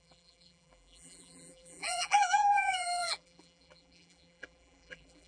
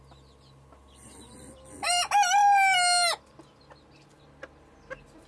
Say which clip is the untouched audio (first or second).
second